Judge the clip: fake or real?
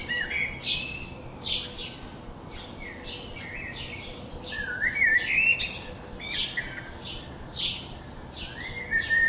real